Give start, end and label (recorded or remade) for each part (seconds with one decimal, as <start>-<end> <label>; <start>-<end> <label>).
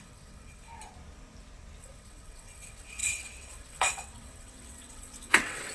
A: 0.0-0.7 remade; 0.7-1.8 recorded; 1.8-5.7 remade